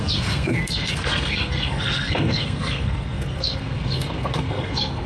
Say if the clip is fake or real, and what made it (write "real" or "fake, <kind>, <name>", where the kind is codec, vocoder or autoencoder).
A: fake, codec, SNAC